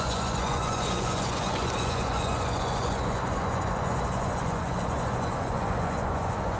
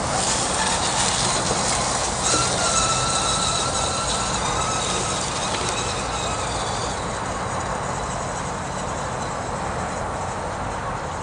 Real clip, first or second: second